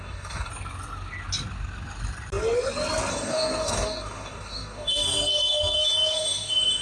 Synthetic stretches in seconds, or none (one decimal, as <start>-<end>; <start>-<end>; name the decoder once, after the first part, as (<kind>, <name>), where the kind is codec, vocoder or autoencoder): 0.0-0.5 (codec, DAC); 3.1-6.8